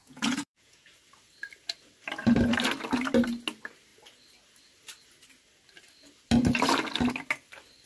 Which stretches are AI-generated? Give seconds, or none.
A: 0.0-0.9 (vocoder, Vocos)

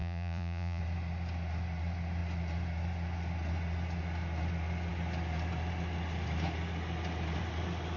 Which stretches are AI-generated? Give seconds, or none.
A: 0.0-0.8 (vocoder, Vocos)

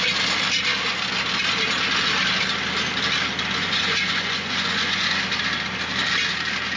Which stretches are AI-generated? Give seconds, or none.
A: 3.6-5.2 (vocoder, Vocos)

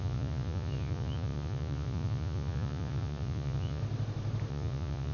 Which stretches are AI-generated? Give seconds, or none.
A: 0.0-3.8 (vocoder, Vocos); 4.5-5.1

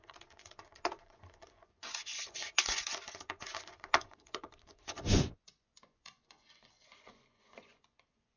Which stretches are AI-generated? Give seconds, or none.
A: 0.0-8.4 (vocoder, Vocos)

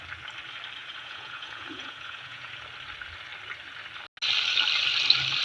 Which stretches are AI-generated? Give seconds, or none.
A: 0.8-2.5 (vocoder, Vocos)

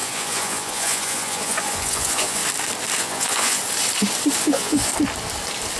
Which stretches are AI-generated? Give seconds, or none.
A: 0.0-2.4 (vocoder, Vocos); 3.0-3.6; 4.4-4.9